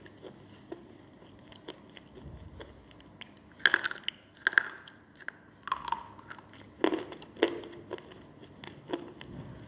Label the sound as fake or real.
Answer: real